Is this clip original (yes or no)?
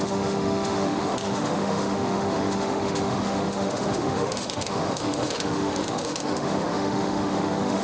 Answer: no